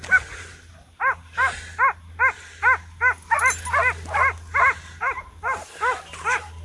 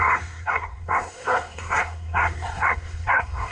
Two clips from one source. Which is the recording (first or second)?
first